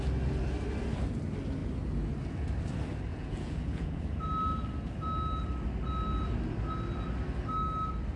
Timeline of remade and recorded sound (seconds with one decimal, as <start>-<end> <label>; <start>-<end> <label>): 0.0-3.1 recorded; 3.1-4.0 remade; 4.0-8.2 recorded